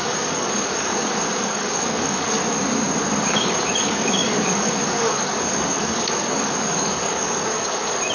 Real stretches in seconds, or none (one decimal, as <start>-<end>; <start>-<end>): 2.4-3.2